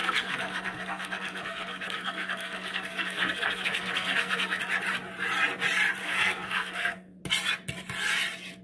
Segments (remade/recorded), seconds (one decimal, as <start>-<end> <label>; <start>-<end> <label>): 0.0-4.6 remade; 4.6-6.0 recorded; 6.0-7.2 remade; 7.2-8.6 recorded